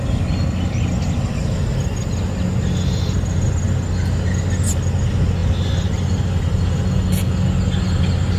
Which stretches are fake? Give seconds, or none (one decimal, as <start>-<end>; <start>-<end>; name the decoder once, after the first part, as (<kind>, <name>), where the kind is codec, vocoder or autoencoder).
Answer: none